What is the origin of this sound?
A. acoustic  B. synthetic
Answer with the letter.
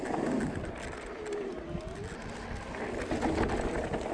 A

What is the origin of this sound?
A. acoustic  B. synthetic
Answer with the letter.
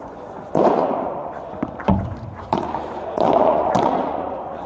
B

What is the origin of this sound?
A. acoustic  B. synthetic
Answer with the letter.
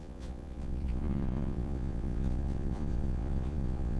B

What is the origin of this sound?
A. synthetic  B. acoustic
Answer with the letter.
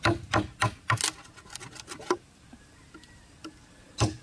B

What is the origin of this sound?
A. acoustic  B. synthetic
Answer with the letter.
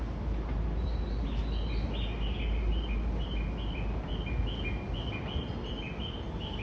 A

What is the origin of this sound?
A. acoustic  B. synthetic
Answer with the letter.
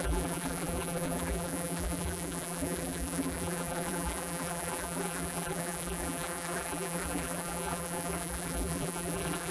B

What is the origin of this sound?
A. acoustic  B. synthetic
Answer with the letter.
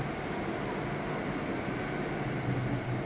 A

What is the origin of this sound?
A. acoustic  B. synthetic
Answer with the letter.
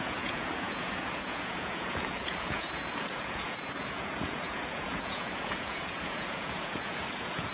B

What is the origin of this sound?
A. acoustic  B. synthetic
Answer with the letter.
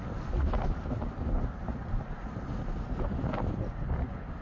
A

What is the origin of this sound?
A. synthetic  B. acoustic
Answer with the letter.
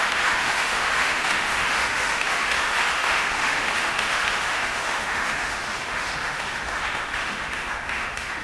A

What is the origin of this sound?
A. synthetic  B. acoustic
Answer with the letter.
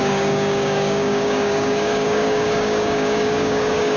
A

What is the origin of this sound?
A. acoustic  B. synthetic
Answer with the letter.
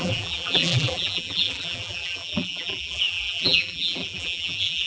B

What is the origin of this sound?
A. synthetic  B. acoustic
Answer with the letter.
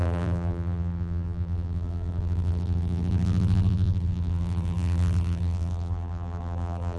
A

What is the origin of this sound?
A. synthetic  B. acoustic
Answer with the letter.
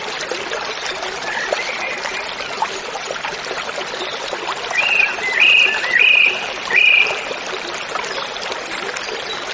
B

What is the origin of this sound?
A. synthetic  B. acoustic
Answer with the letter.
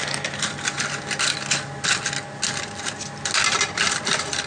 B